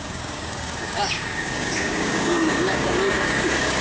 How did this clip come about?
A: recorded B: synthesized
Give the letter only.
B